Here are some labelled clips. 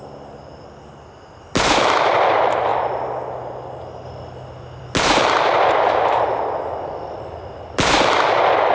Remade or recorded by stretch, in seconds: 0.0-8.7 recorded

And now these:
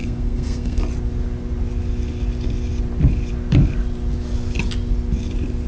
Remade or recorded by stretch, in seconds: 0.0-0.8 remade; 0.8-5.7 recorded

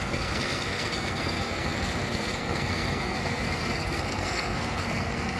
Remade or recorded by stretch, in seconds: 0.0-5.4 remade

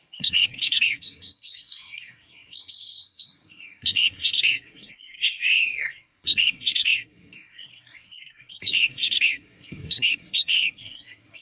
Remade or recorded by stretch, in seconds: 0.0-11.4 remade

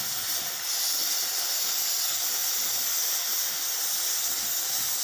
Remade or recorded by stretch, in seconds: 0.0-5.0 recorded